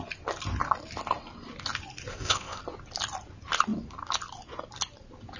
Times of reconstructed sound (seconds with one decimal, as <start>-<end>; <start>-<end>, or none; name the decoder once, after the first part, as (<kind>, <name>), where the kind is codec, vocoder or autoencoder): 2.1-2.6 (codec, ZipCodec)